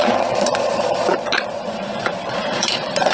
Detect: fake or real fake